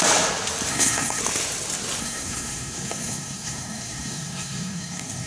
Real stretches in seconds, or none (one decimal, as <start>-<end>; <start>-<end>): 0.0-0.7; 1.2-2.0